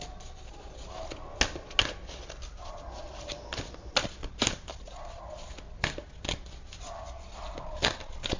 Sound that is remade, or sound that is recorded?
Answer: recorded